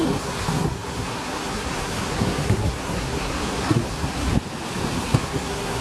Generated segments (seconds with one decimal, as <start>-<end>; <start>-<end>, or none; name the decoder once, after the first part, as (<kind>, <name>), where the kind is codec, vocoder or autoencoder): 0.0-4.3 (codec, SNAC); 5.0-5.8